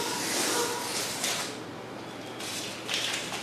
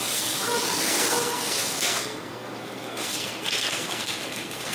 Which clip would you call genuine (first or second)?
first